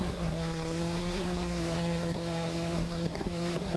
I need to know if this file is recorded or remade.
remade